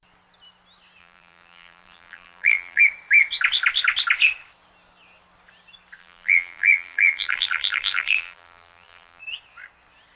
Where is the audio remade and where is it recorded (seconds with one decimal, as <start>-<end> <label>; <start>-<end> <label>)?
0.0-1.0 recorded; 1.0-2.8 remade; 2.8-6.0 recorded; 6.0-9.2 remade; 9.2-10.2 recorded